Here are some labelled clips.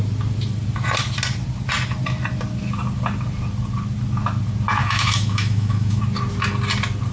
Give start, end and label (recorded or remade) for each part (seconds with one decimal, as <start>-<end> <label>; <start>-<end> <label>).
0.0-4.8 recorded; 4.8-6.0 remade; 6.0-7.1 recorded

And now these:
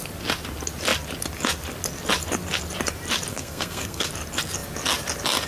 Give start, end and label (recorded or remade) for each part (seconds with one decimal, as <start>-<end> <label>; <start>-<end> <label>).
0.0-3.3 recorded; 3.3-4.1 remade; 4.1-5.5 recorded

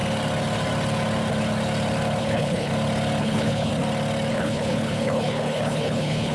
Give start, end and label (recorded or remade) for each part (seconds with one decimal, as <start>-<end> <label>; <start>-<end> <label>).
0.0-2.2 recorded; 2.2-2.7 remade; 2.7-3.2 recorded; 3.2-3.7 remade; 3.7-4.3 recorded; 4.3-6.3 remade